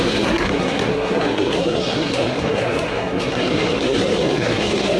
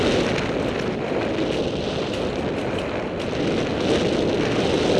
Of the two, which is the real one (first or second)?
second